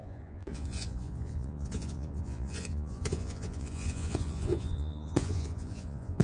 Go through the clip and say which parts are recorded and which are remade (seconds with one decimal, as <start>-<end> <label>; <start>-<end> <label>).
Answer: 0.0-6.2 remade